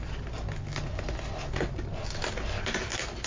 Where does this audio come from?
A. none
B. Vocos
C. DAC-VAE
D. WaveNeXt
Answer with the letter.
A